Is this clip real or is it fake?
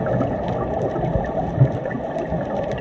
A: real